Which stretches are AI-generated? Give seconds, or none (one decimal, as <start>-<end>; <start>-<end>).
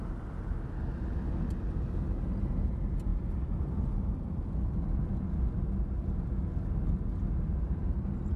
none